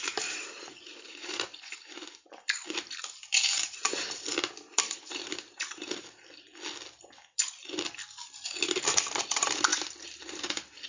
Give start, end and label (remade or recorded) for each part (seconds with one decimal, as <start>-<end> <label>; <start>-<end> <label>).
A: 0.0-6.5 remade; 6.5-8.8 recorded; 8.8-10.9 remade